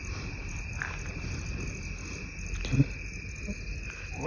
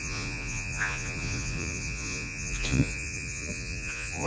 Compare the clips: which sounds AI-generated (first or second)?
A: second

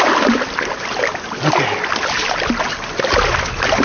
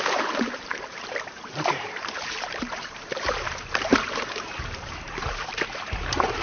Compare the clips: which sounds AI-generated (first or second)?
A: second